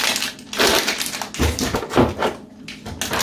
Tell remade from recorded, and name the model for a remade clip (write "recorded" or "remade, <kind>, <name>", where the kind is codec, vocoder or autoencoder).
recorded